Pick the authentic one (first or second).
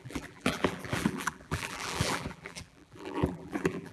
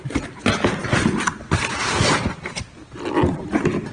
second